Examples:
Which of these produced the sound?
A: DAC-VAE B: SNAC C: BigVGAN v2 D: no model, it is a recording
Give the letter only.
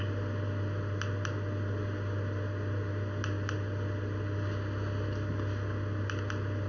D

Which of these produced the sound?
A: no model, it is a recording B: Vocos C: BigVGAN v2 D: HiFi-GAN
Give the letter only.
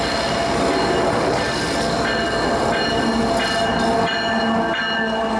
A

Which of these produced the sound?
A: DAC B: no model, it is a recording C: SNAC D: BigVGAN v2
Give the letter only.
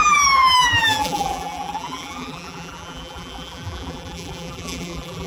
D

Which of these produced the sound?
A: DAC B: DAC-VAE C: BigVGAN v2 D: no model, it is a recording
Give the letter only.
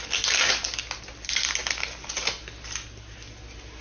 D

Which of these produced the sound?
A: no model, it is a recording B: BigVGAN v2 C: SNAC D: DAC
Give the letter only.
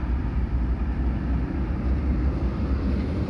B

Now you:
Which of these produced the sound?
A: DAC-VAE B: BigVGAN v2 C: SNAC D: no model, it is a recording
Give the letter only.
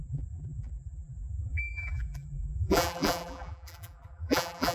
B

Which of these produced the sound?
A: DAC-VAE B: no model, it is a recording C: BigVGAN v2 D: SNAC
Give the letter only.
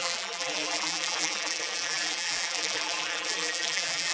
C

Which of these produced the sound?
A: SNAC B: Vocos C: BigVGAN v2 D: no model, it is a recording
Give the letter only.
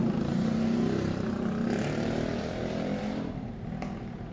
C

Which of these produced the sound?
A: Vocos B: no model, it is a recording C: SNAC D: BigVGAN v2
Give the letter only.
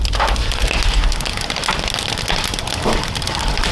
B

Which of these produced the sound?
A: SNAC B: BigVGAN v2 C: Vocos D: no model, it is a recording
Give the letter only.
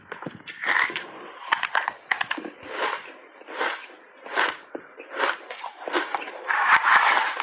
B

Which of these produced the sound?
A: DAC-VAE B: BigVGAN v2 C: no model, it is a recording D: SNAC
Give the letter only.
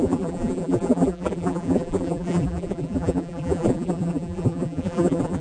B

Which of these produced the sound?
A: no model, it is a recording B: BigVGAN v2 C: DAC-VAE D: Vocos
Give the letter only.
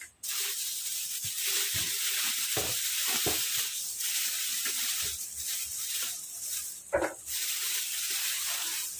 A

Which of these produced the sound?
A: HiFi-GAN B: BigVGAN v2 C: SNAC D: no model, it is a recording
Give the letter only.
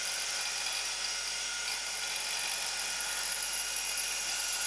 D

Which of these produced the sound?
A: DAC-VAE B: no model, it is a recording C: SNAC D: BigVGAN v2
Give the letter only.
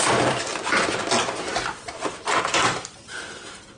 D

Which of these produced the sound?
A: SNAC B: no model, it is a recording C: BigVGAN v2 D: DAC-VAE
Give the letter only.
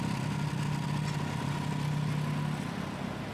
B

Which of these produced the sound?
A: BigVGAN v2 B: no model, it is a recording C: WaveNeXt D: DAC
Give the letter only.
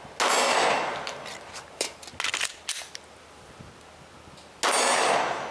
B